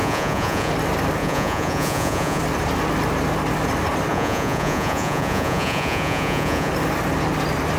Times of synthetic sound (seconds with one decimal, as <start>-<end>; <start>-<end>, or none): 0.0-0.7; 1.2-2.4; 4.1-6.7

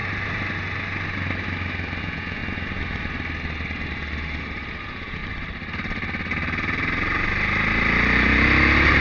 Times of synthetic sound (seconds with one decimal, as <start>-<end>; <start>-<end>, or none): 2.0-2.4; 4.8-5.2

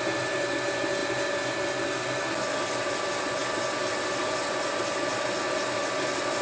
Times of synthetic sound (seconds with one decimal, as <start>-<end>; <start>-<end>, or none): none

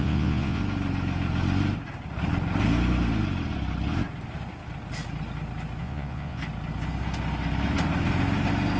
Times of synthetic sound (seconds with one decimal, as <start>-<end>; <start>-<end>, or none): 0.0-0.6; 5.8-6.4

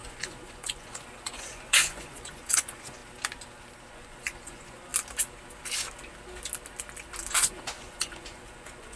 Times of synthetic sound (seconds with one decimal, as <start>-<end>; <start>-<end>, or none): 0.0-3.0; 3.9-4.9; 7.3-9.0

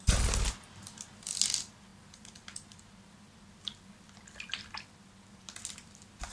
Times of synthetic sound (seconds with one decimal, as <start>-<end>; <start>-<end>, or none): none

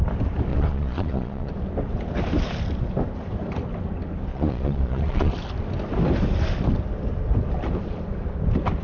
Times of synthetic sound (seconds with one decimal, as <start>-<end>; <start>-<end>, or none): 0.5-1.5; 4.3-5.3

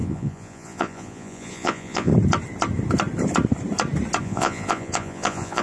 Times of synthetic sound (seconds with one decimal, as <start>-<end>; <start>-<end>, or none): 0.0-2.1; 4.2-5.6